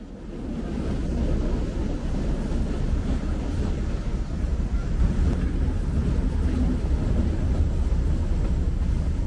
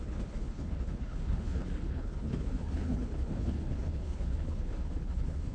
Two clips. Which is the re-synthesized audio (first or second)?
second